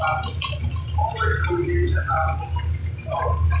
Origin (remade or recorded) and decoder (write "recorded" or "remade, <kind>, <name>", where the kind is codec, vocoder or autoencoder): recorded